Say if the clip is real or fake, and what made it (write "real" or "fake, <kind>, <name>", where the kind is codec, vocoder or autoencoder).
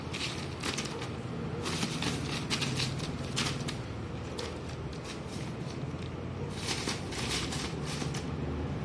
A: real